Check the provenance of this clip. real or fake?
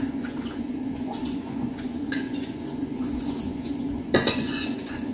fake